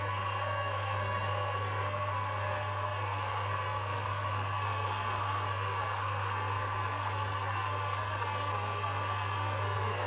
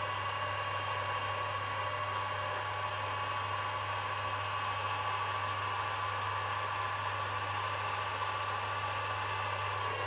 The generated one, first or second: first